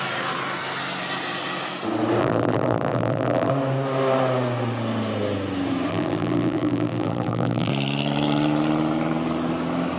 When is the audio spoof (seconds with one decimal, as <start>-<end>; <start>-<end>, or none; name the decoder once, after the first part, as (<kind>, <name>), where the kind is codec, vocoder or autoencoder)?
2.2-3.5 (vocoder, BigVGAN v2); 5.9-7.7